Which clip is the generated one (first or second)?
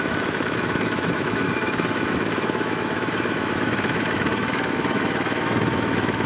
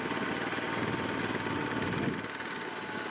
first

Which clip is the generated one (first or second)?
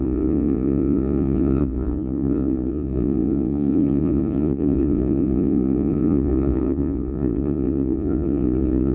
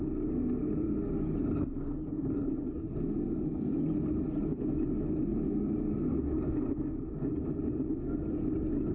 first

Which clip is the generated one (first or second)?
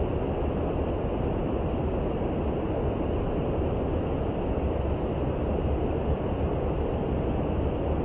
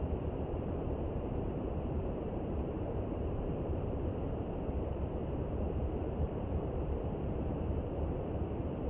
second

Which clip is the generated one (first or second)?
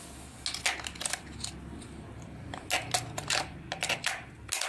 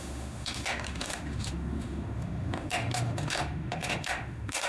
second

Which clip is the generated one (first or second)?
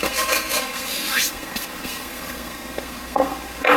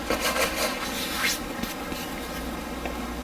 first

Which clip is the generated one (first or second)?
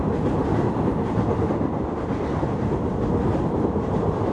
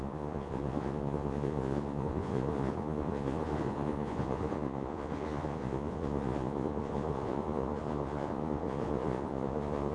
second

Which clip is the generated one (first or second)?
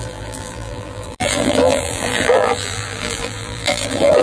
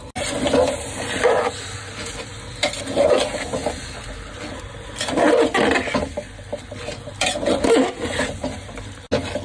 first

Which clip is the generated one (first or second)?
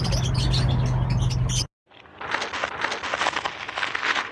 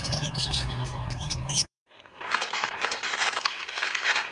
second